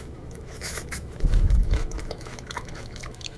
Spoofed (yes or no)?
yes